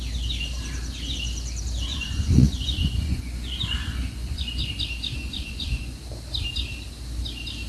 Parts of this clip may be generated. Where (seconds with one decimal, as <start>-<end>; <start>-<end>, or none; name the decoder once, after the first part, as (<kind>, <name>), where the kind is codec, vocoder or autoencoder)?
1.9-4.7 (vocoder, Vocos); 5.2-6.0